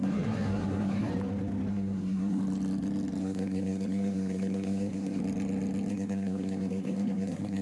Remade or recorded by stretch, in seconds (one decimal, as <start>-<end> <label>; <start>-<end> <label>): 0.0-1.1 remade; 1.1-1.7 recorded; 1.7-2.4 remade; 2.4-3.2 recorded; 3.2-5.2 remade; 5.2-5.9 recorded; 5.9-7.6 remade

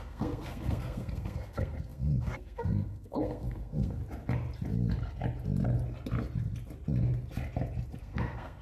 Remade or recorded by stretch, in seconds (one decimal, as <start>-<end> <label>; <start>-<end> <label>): 0.0-4.0 remade; 4.0-8.0 recorded; 8.0-8.6 remade

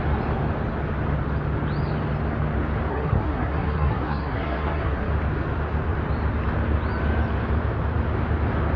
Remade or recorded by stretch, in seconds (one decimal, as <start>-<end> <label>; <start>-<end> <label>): 0.0-2.9 recorded; 2.9-5.1 remade; 5.1-8.8 recorded